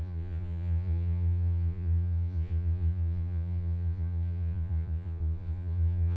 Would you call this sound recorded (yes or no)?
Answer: no